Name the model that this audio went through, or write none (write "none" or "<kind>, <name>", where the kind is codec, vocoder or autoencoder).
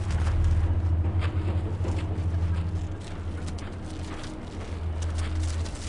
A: none